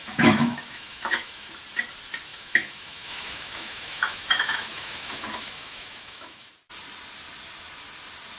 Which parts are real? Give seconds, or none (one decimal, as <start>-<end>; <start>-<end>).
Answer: 1.5-2.3; 6.5-8.4